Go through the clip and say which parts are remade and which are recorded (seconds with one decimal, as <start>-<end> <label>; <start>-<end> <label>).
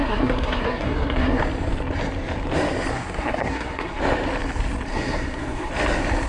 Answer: 0.0-1.4 remade; 1.4-2.9 recorded; 2.9-4.0 remade; 4.0-4.9 recorded; 4.9-5.7 remade; 5.7-6.3 recorded